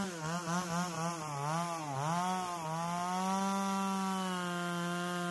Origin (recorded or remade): recorded